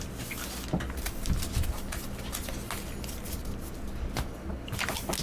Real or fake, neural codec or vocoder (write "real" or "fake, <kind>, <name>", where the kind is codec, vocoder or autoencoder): real